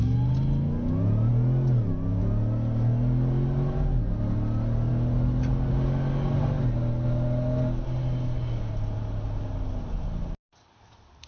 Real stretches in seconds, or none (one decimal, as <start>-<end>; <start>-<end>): 0.0-11.3